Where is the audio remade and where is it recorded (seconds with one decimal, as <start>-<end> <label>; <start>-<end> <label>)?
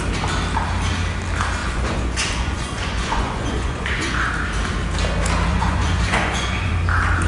0.0-1.6 recorded; 1.6-4.3 remade; 4.3-5.5 recorded; 5.5-6.7 remade; 6.7-7.3 recorded